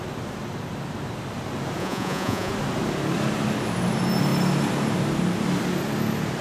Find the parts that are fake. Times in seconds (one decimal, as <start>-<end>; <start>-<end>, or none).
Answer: 1.8-2.5